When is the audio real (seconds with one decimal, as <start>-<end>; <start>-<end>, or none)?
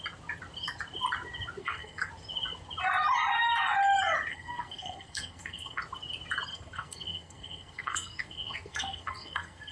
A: 0.0-1.6; 2.1-4.3; 5.8-6.5